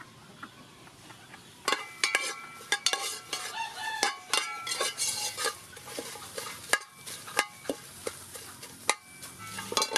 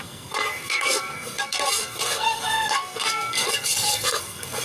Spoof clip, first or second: second